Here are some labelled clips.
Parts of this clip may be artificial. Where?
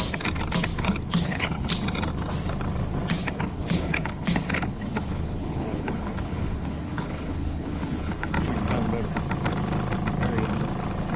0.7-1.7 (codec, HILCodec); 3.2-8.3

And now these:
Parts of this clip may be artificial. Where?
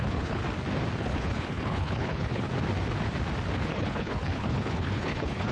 0.0-0.4 (codec, HILCodec); 1.0-2.5; 3.6-5.5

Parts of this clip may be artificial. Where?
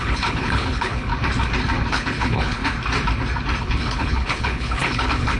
0.0-1.1 (codec, HILCodec); 1.9-2.6; 3.6-5.4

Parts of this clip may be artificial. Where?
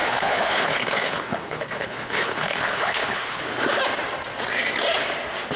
0.0-3.4 (codec, HILCodec)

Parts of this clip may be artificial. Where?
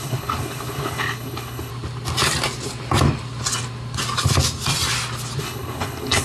0.0-1.7 (codec, HILCodec); 5.4-6.2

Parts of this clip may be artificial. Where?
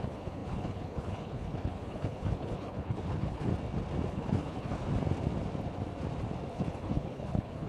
0.0-3.5 (codec, HILCodec); 4.1-4.9; 6.5-7.7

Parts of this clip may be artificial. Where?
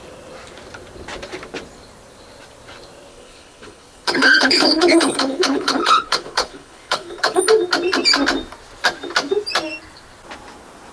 3.1-7.4 (codec, HILCodec)